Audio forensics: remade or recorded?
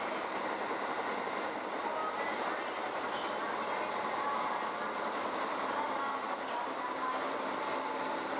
recorded